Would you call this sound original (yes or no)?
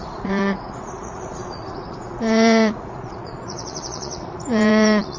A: no